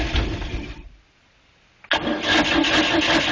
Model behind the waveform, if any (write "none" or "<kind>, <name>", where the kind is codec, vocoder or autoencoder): none